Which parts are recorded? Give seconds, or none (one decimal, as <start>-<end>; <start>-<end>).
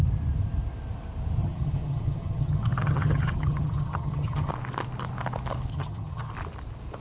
0.0-1.4; 4.5-5.7; 6.3-7.0